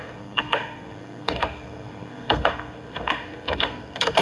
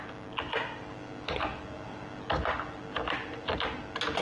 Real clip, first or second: second